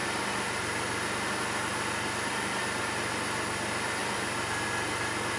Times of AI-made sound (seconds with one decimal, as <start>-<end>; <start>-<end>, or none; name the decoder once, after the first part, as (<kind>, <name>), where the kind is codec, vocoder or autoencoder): none